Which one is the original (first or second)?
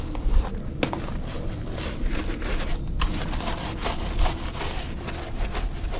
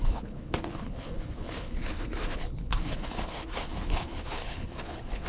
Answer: first